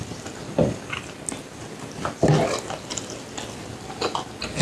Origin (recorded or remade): recorded